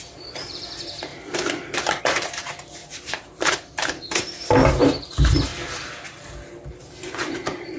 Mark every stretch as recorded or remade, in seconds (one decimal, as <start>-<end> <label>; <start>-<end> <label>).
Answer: 0.0-1.1 remade; 1.1-2.0 recorded; 2.0-5.5 remade; 5.5-6.7 recorded; 6.7-7.8 remade